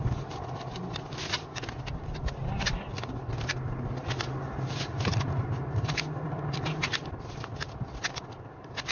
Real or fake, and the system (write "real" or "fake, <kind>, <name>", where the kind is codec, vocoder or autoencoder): real